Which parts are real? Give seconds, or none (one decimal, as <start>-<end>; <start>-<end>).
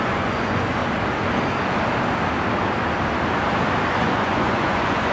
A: 0.8-3.9